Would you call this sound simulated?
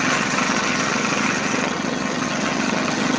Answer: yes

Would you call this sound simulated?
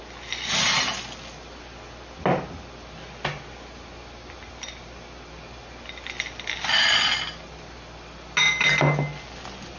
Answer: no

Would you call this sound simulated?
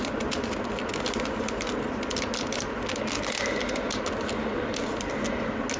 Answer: no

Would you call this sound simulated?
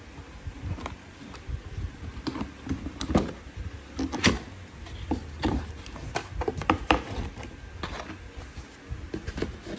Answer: no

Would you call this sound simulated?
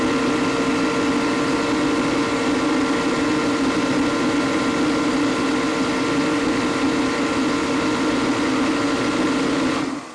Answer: no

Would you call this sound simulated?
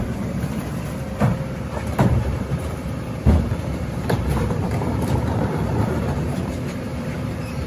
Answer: yes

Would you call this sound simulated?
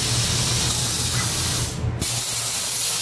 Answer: no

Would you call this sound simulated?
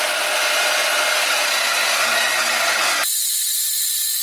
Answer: no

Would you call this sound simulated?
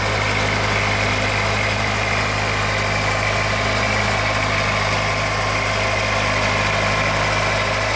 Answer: no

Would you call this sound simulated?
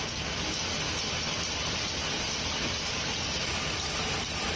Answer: no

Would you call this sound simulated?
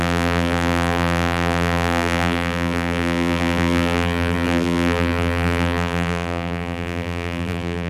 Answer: yes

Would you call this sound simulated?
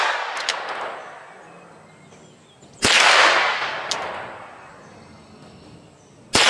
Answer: no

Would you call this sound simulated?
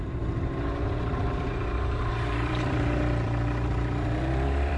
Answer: yes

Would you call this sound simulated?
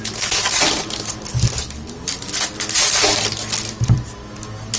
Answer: no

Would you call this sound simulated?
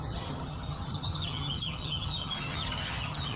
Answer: yes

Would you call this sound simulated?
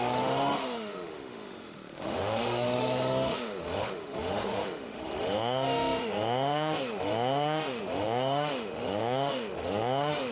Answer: yes